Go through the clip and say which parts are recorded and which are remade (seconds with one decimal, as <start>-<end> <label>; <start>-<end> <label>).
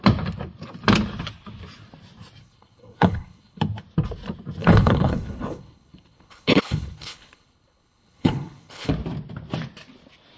0.0-2.4 recorded; 2.4-3.6 remade; 3.6-4.6 recorded; 4.6-8.9 remade; 8.9-10.4 recorded